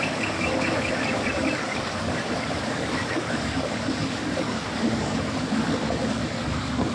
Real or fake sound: fake